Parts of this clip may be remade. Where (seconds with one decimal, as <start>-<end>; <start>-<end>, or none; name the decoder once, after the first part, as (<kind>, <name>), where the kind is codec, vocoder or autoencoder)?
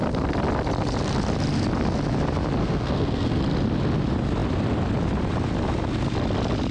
2.6-3.4 (codec, SNAC)